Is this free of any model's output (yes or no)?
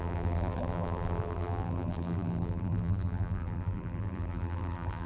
no